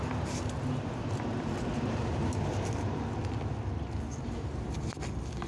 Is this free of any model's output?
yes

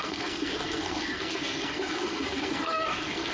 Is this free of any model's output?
no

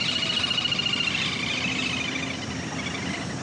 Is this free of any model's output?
yes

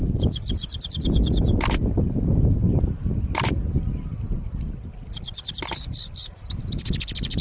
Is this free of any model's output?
yes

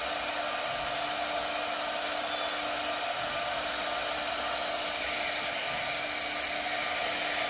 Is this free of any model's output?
yes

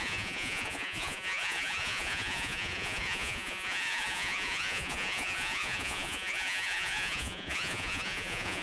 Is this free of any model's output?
no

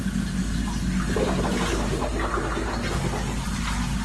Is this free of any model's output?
yes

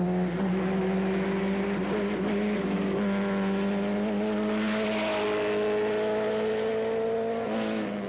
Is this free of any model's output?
yes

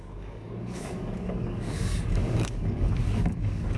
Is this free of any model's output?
no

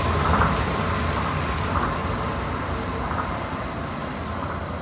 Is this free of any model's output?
yes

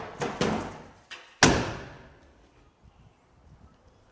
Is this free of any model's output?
yes